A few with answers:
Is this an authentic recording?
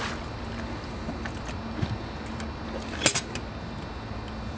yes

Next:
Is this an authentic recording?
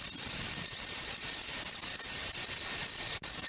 yes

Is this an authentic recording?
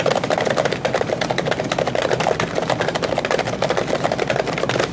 no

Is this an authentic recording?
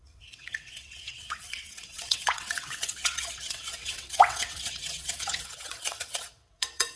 no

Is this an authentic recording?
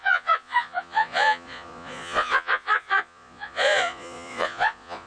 no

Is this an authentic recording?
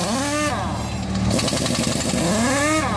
yes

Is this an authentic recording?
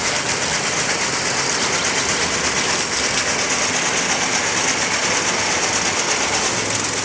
yes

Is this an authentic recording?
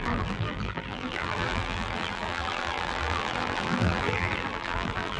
no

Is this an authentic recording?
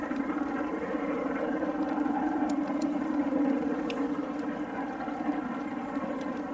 no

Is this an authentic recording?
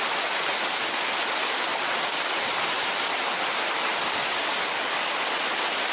yes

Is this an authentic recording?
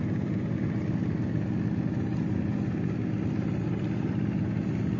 yes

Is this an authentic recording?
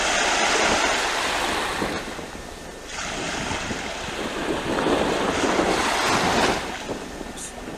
yes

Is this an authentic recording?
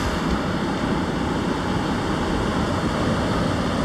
yes